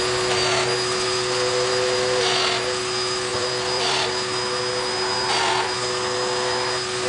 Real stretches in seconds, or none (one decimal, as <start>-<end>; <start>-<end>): 0.0-3.3; 4.1-7.1